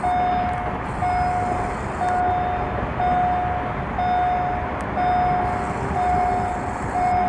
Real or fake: real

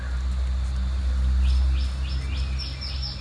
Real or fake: real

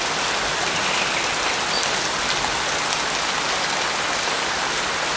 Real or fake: real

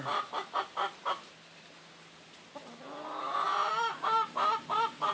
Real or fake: real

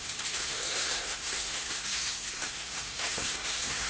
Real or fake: fake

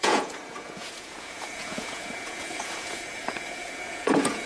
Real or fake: fake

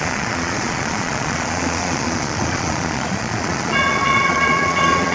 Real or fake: fake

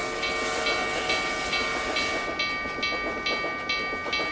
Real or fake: real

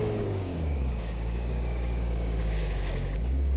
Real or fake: fake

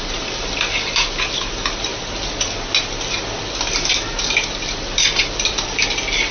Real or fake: real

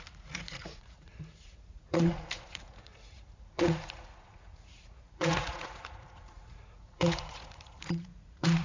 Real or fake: fake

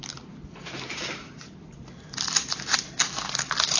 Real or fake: real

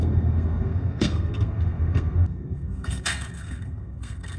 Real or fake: fake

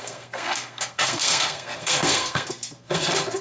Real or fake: fake